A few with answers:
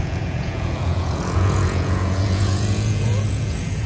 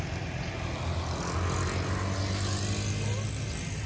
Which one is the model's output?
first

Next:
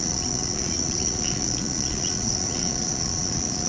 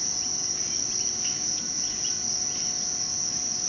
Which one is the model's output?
first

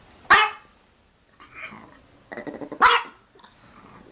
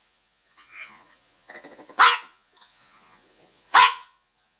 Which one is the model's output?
second